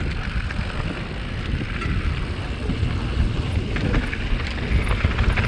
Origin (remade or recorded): recorded